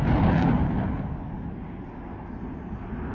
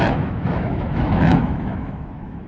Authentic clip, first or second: first